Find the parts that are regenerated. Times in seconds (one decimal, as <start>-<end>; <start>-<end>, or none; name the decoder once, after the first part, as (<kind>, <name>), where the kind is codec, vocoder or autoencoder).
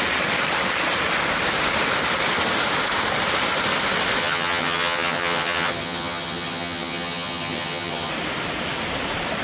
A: 4.2-8.1 (vocoder, HiFi-GAN)